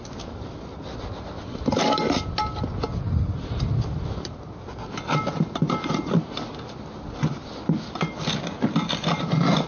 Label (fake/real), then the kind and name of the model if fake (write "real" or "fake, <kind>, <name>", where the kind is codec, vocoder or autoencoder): real